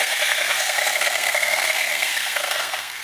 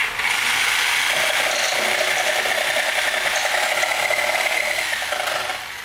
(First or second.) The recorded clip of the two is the second